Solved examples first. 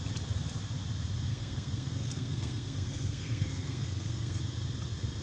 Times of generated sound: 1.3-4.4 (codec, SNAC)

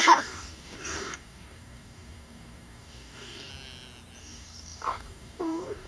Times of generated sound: 0.0-3.5 (codec, DAC); 4.2-5.9